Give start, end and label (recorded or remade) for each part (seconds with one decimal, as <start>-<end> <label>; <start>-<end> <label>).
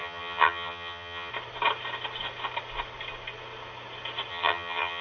0.0-1.3 remade; 1.3-4.3 recorded; 4.3-5.0 remade